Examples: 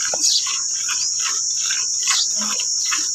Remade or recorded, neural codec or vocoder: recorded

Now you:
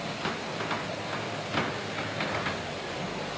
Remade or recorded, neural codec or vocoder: recorded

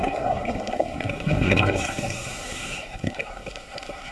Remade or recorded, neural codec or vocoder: remade, codec, SNAC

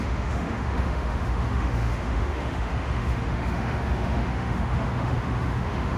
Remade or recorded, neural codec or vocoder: remade, autoencoder, DAC-VAE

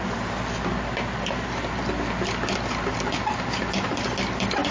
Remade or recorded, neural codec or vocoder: recorded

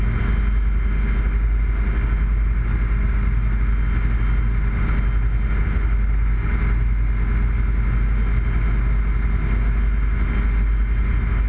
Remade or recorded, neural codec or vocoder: recorded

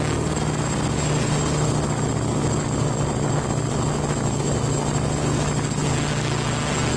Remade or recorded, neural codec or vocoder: recorded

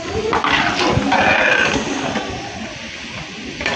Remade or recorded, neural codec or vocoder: recorded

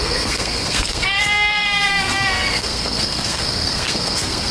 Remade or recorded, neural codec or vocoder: remade, codec, SNAC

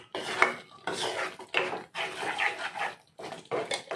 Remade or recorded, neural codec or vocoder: recorded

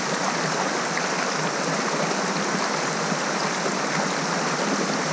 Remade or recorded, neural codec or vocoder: recorded